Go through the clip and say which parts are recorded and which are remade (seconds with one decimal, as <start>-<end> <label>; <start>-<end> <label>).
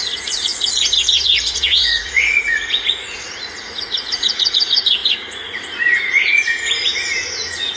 0.0-7.8 remade